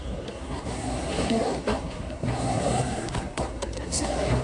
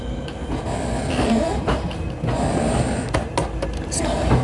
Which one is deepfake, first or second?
first